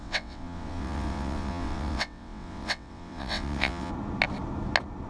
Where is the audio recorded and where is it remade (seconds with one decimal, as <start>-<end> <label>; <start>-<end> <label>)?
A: 0.0-3.9 remade; 3.9-5.1 recorded